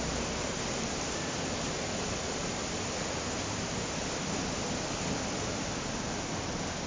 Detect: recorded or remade recorded